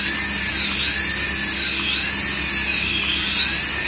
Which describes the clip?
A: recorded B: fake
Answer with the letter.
A